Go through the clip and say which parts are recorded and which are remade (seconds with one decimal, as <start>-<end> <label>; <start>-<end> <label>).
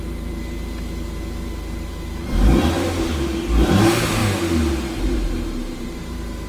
0.0-4.2 remade; 4.2-5.0 recorded; 5.0-6.5 remade